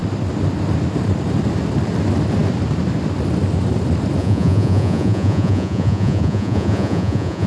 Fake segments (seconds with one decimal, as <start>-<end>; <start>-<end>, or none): 4.2-7.5